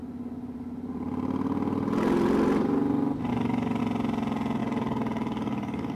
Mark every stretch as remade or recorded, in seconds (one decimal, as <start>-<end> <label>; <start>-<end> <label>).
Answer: 0.0-3.3 recorded; 3.3-3.8 remade; 3.8-4.6 recorded; 4.6-5.9 remade